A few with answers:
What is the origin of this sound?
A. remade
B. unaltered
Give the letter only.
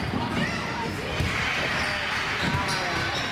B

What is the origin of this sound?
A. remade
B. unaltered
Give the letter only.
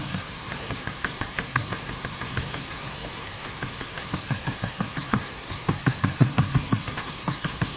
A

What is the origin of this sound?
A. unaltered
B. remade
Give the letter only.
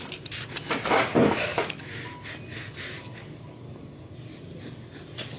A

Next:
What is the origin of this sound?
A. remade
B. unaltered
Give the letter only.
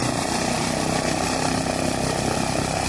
A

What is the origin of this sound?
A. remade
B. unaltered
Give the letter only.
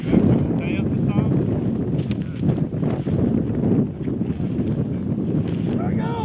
B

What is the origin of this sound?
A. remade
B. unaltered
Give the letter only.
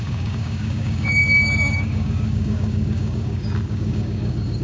A